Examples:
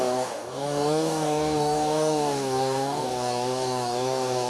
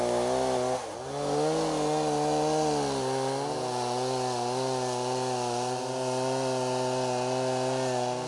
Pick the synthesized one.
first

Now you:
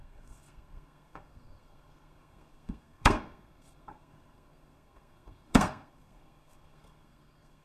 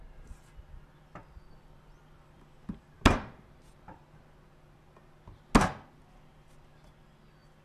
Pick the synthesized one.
first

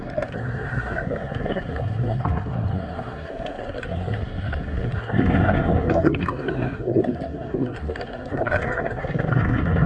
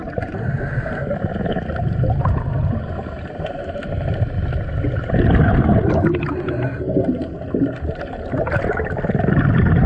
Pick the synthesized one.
first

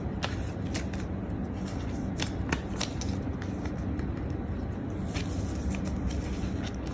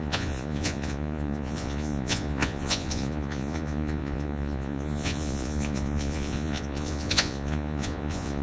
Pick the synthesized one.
second